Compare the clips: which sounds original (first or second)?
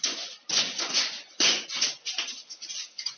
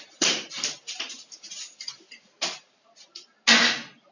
second